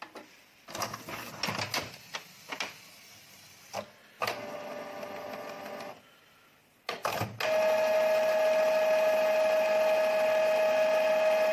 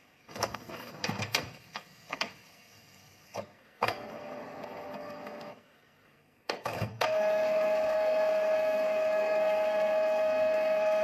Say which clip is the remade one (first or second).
second